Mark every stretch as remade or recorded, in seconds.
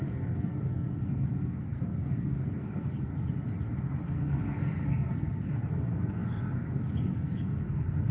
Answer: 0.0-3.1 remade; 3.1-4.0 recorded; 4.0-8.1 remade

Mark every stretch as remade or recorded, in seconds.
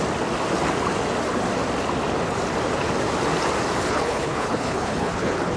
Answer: 0.0-3.8 recorded; 3.8-5.6 remade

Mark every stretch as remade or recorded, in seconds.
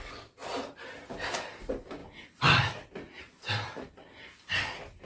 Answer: 0.0-5.1 recorded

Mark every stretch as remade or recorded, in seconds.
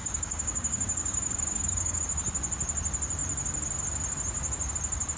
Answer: 0.0-2.0 remade; 2.0-5.2 recorded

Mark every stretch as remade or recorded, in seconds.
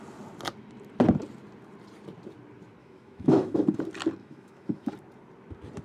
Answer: 0.0-2.8 recorded; 2.8-3.8 remade; 3.8-4.2 recorded; 4.2-4.9 remade; 4.9-5.8 recorded